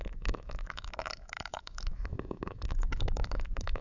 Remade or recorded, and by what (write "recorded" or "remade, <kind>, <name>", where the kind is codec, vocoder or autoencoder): remade, autoencoder, DAC-VAE